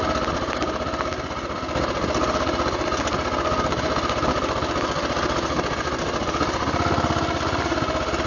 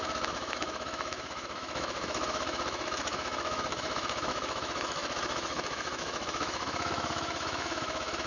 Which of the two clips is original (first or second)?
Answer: first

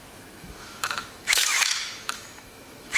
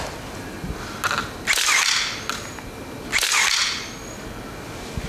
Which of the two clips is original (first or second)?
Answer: second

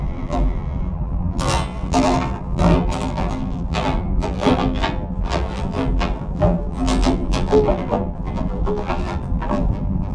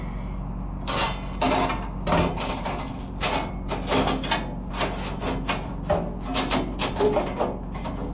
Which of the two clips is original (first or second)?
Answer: second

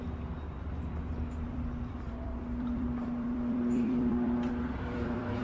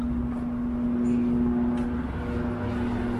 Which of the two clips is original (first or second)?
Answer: second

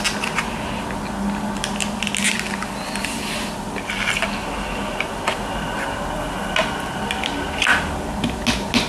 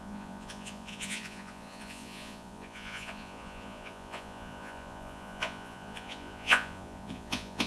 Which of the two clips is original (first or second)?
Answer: first